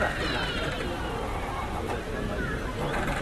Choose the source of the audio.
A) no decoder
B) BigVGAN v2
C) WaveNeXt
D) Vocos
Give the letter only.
B